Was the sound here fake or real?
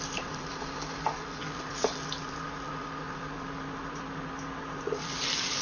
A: real